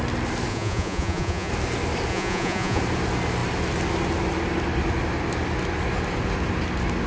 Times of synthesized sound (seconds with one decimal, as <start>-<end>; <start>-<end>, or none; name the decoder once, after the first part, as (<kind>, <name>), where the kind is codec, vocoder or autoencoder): 0.5-1.5 (vocoder, Vocos); 2.1-2.8